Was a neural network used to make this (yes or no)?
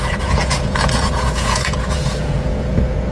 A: yes